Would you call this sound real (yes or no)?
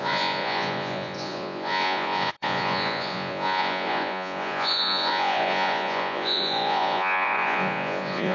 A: no